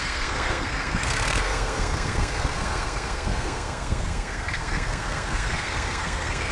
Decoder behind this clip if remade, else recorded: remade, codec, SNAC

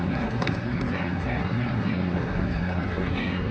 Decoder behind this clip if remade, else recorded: remade, codec, SNAC